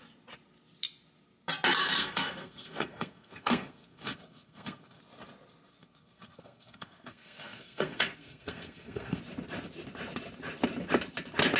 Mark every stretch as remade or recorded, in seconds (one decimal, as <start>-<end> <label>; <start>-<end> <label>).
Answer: 0.0-1.8 recorded; 1.8-5.0 remade; 5.0-5.7 recorded; 5.7-9.2 remade; 9.2-11.6 recorded